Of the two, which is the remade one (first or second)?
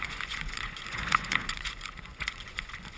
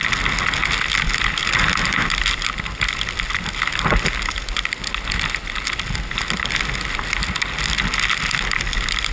first